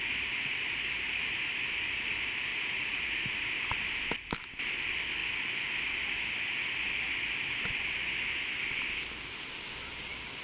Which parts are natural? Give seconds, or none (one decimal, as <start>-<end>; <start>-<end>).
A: 0.0-2.5; 3.0-10.4